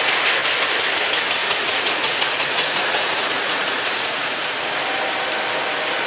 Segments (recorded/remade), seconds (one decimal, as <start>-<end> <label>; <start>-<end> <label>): 0.0-1.4 recorded; 1.4-4.6 remade; 4.6-6.1 recorded